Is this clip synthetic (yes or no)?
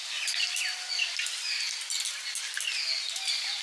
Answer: no